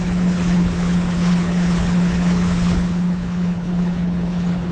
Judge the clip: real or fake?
fake